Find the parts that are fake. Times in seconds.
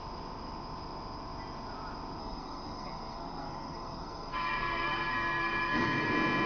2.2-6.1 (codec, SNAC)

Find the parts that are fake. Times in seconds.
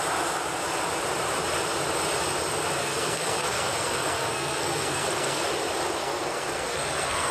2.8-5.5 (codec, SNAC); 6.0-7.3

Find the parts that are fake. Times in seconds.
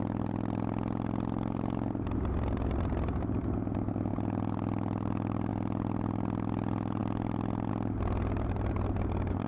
none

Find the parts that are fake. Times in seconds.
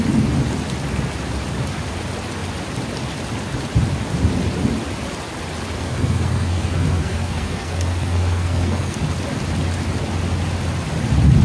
5.8-9.0 (codec, SNAC)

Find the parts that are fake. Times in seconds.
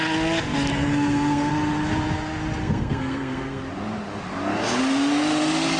0.7-1.5 (codec, SNAC); 2.6-3.6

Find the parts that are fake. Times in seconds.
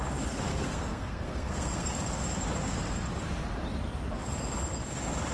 0.5-1.9 (codec, SNAC)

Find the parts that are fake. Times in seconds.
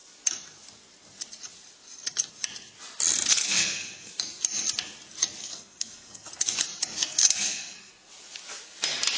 3.3-4.1 (codec, SNAC); 5.4-6.3; 7.0-7.9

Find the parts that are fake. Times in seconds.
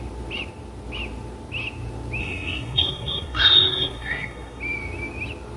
2.2-4.6 (codec, SNAC)